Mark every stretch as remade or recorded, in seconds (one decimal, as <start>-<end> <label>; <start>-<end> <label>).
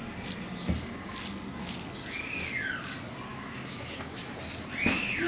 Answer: 0.0-3.3 recorded; 3.3-4.2 remade; 4.2-5.3 recorded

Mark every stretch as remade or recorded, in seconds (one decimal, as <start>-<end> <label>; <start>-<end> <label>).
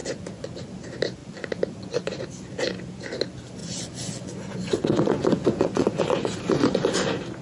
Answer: 0.0-0.7 remade; 0.7-1.2 recorded; 1.2-2.2 remade; 2.2-3.6 recorded; 3.6-6.9 remade; 6.9-7.4 recorded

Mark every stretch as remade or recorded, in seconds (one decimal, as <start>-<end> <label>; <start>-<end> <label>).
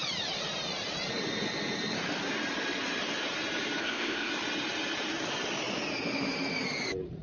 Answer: 0.0-3.8 recorded; 3.8-4.3 remade; 4.3-7.2 recorded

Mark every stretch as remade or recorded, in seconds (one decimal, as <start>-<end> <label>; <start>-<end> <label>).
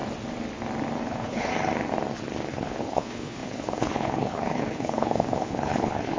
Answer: 0.0-1.0 recorded; 1.0-1.5 remade; 1.5-2.5 recorded; 2.5-6.2 remade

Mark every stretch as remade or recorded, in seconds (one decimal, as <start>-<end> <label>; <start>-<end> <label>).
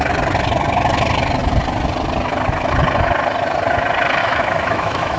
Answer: 0.0-4.2 recorded; 4.2-5.2 remade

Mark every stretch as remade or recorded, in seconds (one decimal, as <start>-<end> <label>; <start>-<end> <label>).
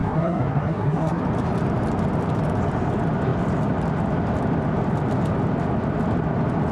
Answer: 0.0-1.2 remade; 1.2-6.7 recorded